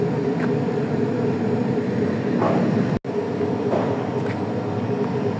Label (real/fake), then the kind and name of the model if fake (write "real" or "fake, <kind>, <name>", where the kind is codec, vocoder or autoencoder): real